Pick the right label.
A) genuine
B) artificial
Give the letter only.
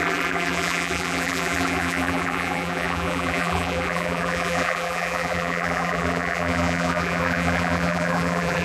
B